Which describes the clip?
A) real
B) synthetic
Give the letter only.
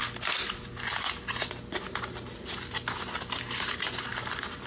A